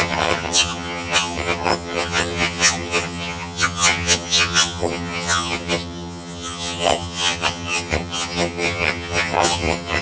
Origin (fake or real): fake